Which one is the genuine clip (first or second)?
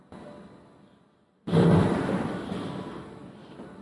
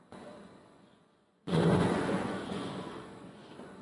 first